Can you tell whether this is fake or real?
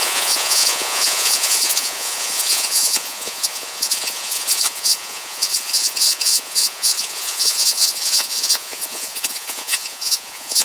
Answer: fake